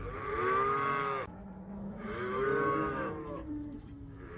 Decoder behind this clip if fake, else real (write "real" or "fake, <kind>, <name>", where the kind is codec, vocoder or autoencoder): fake, autoencoder, DAC-VAE